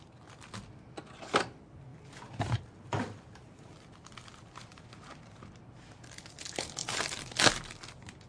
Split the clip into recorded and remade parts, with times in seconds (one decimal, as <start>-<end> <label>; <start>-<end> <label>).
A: 0.0-1.9 recorded; 1.9-4.9 remade; 4.9-6.8 recorded; 6.8-7.5 remade; 7.5-8.3 recorded